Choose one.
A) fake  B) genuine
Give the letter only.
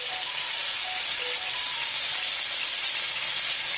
B